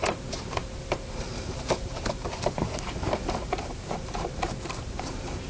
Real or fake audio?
fake